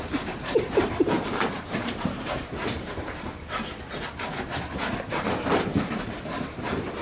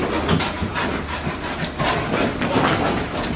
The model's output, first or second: first